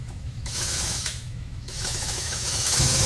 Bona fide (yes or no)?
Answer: no